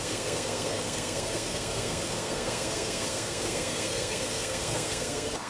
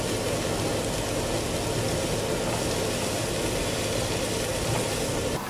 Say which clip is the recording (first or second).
second